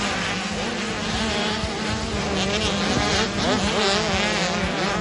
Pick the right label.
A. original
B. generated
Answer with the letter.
A